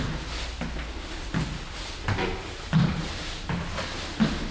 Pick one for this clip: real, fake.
real